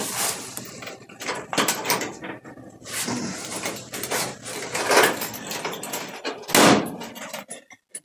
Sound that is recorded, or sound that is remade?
recorded